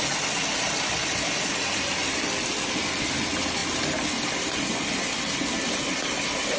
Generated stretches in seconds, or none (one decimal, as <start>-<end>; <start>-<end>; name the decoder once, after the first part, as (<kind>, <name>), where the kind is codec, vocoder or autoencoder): none